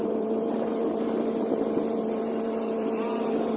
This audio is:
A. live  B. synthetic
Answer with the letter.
B